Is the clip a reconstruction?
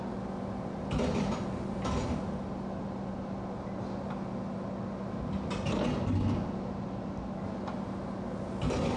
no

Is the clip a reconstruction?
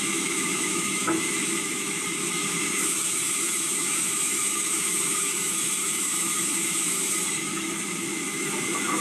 yes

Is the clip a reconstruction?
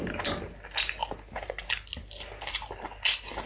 no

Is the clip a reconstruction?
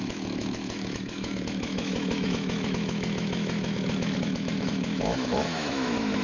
yes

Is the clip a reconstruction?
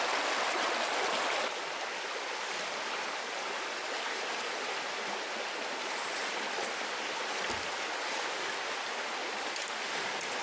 no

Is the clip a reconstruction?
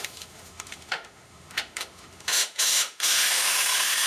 yes